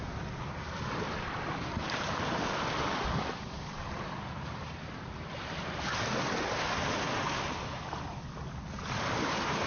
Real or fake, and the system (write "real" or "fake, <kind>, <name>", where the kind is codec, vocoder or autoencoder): real